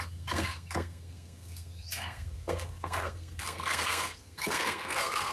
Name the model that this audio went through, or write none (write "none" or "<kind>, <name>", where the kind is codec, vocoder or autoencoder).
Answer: codec, SNAC